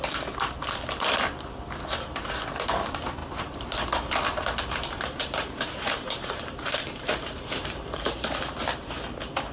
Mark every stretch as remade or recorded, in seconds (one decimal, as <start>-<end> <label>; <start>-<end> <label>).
0.0-3.2 recorded; 3.2-8.4 remade; 8.4-9.5 recorded